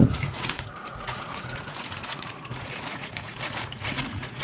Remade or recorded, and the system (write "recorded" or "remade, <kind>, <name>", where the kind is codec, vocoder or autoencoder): remade, vocoder, Vocos